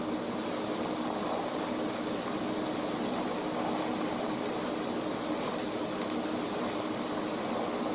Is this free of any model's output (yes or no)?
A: yes